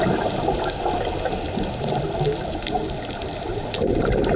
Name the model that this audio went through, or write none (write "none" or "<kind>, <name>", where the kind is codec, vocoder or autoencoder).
none